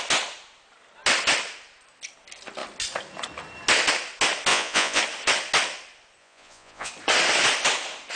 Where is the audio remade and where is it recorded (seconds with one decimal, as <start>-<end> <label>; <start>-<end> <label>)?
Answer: 0.0-4.5 recorded; 4.5-5.0 remade; 5.0-6.2 recorded; 6.2-6.9 remade; 6.9-8.2 recorded